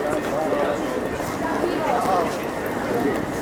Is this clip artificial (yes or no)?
no